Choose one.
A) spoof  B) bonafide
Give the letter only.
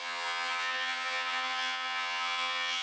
A